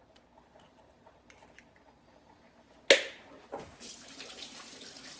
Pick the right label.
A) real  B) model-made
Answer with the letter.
A